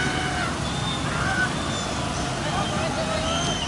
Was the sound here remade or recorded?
recorded